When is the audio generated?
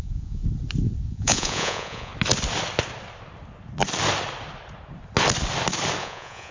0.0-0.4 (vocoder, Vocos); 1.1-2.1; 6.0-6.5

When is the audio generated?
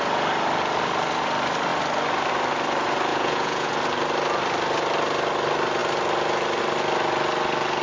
3.1-3.7 (vocoder, Vocos)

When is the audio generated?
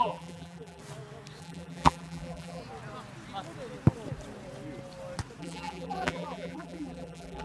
0.0-0.8 (vocoder, BigVGAN v2); 1.4-2.6; 5.4-7.4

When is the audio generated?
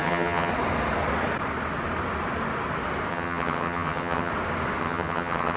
0.0-0.5 (vocoder, HiFi-GAN); 3.1-4.3; 4.8-5.6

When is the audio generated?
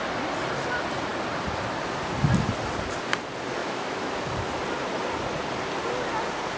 3.6-4.1 (autoencoder, DAC-VAE)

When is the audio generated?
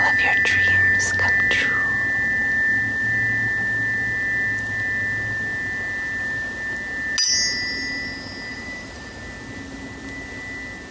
8.5-9.1 (vocoder, BigVGAN v2)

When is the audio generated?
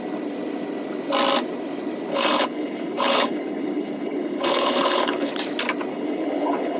2.1-5.3 (codec, HILCodec); 5.9-6.8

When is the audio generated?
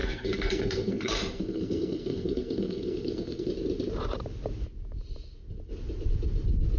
0.0-3.5 (codec, SNAC)